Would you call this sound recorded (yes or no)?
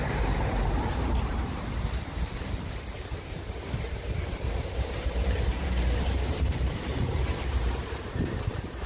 no